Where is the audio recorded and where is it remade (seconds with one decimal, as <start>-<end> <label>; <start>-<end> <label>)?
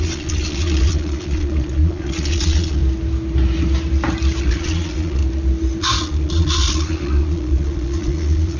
0.0-2.8 remade; 2.8-4.4 recorded; 4.4-5.2 remade; 5.2-5.8 recorded; 5.8-8.6 remade